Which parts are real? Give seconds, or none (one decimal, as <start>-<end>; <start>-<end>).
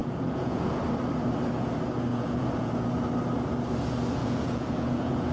0.8-2.1; 2.9-4.2